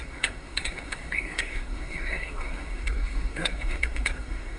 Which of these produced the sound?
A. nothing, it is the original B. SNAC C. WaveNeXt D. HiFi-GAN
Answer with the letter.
B